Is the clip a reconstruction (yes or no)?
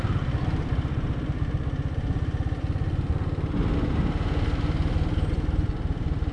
no